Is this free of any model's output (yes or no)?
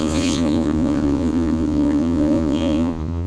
no